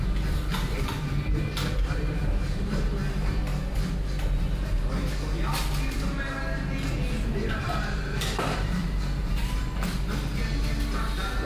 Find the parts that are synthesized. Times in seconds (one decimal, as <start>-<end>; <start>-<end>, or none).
0.0-3.5; 7.5-8.8